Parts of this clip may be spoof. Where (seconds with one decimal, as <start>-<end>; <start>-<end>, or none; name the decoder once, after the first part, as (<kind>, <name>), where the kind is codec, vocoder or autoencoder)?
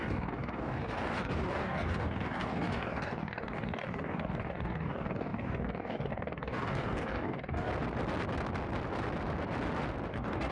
0.0-7.7 (codec, DAC); 10.1-10.5